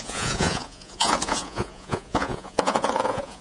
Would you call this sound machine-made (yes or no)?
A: yes